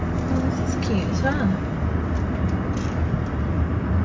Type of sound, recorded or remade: recorded